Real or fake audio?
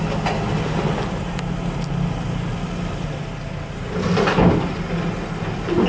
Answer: real